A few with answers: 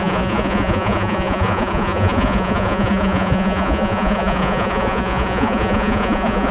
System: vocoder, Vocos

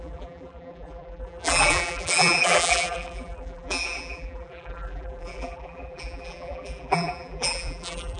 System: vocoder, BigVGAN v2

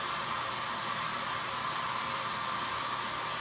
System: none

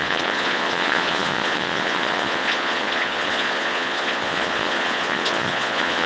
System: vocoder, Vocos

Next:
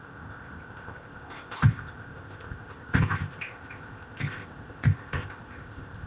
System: codec, ZipCodec